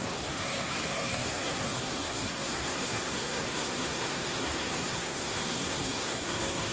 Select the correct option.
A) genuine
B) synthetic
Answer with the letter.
B